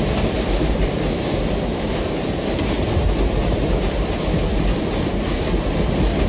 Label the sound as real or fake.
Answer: fake